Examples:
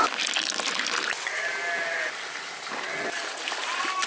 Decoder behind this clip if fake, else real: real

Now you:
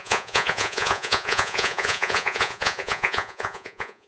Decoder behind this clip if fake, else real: fake, vocoder, Vocos